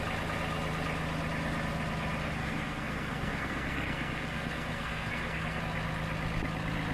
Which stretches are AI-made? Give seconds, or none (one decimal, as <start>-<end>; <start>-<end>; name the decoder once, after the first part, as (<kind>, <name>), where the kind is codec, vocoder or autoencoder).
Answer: 2.4-5.6 (codec, SNAC)

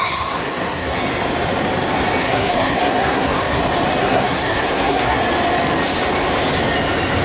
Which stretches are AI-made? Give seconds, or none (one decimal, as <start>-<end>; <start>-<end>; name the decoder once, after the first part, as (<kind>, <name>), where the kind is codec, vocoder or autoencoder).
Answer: 0.0-1.0 (codec, SNAC); 2.2-3.6; 4.0-5.2